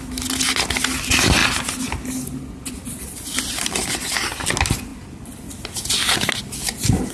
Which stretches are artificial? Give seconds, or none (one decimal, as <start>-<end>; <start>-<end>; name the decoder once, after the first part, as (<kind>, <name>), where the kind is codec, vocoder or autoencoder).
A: none